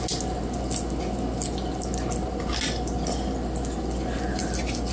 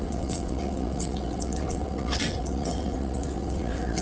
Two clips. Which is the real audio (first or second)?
first